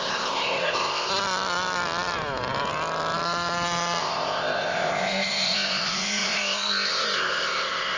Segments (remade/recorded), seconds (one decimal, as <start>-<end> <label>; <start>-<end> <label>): 0.0-1.1 remade; 1.1-4.0 recorded; 4.0-8.0 remade